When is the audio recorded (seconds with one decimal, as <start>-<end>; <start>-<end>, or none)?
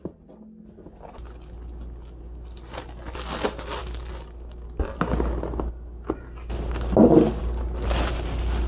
0.0-8.7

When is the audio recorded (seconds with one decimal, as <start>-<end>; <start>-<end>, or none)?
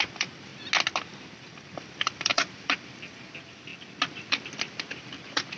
0.5-1.1; 3.7-4.3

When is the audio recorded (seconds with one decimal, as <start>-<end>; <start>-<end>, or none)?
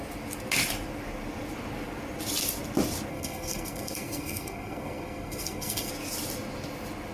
0.0-3.1; 5.9-7.1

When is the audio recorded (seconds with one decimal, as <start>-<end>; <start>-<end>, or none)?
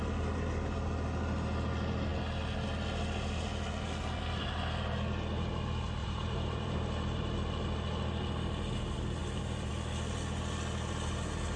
0.0-6.0; 7.2-9.2; 9.7-11.6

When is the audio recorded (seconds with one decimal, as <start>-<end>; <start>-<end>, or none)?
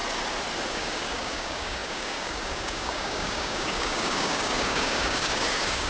0.0-0.7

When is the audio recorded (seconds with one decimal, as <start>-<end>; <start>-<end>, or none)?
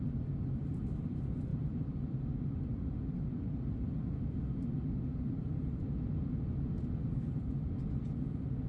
0.0-8.7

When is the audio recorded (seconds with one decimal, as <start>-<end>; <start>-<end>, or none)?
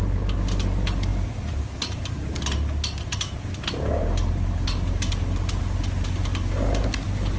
0.0-7.4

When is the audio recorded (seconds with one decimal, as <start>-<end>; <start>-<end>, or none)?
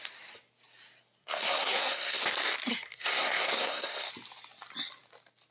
0.0-1.2; 2.2-2.7; 4.1-5.5